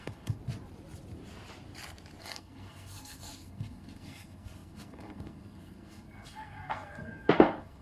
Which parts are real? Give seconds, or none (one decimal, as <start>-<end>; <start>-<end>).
0.4-2.2